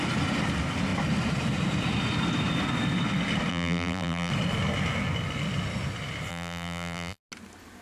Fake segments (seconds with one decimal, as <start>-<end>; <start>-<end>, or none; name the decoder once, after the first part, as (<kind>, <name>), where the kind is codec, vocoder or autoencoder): 3.5-4.3 (vocoder, BigVGAN v2); 6.3-7.2